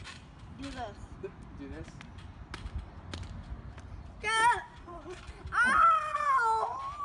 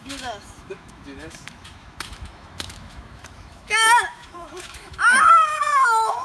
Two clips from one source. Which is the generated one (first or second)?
second